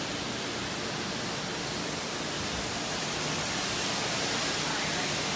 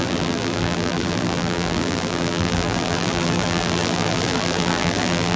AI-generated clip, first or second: second